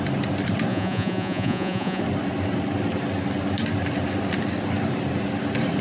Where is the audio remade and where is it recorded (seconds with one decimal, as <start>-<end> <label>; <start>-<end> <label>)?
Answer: 0.0-0.7 recorded; 0.7-2.0 remade; 2.0-5.8 recorded